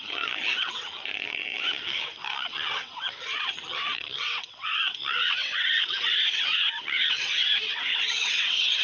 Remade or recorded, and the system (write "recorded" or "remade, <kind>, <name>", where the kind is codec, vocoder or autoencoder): remade, vocoder, WaveNeXt